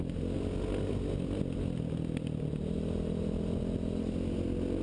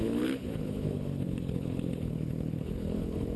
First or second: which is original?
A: first